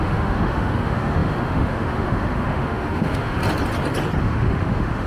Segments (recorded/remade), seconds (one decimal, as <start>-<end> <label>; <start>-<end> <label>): 0.0-3.4 remade; 3.4-4.2 recorded; 4.2-5.1 remade

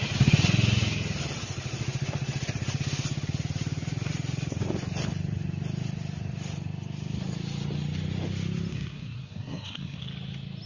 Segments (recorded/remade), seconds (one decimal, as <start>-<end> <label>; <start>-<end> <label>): 0.0-8.7 recorded; 8.7-10.0 remade; 10.0-10.7 recorded

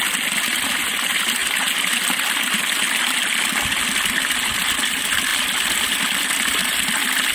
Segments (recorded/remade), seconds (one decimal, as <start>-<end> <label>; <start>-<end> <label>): 0.0-7.3 recorded

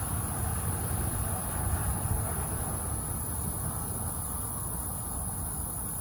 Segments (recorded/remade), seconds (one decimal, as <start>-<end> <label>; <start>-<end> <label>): 0.0-6.0 recorded

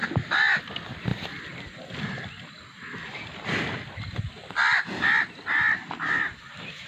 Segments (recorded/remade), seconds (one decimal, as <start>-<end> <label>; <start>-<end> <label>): 0.0-0.6 recorded; 0.6-6.9 remade

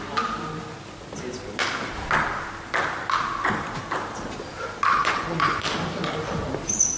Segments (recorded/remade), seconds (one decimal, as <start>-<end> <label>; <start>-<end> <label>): 0.0-5.0 recorded; 5.0-5.6 remade; 5.6-7.0 recorded